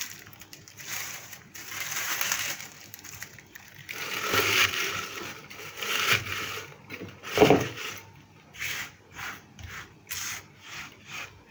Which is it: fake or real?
fake